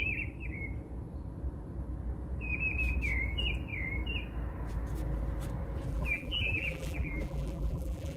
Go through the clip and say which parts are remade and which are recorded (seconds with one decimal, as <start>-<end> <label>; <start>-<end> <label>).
0.0-5.9 recorded; 5.9-8.2 remade